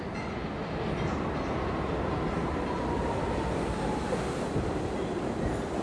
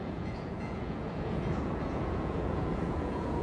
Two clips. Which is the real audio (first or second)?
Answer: first